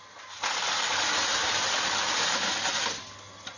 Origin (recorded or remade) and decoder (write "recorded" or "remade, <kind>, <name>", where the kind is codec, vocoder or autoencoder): recorded